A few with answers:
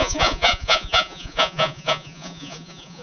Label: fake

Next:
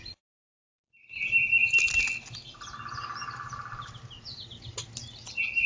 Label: real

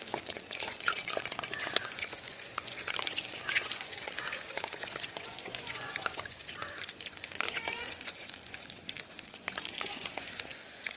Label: fake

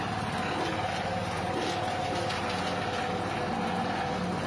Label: real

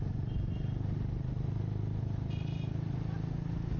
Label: real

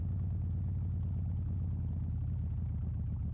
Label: real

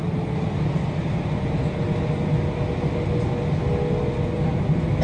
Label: real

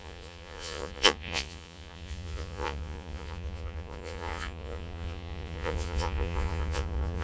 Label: fake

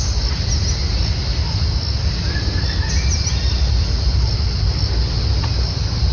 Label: real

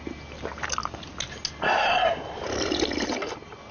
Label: real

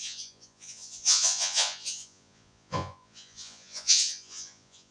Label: fake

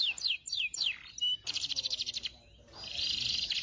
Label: real